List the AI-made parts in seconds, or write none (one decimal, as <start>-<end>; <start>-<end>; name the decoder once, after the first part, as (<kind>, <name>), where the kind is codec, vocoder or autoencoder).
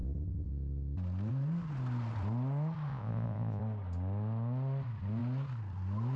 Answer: 2.9-3.6 (vocoder, Vocos)